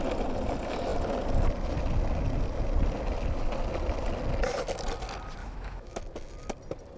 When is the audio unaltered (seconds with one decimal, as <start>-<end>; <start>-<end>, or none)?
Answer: 0.0-5.4; 6.0-7.0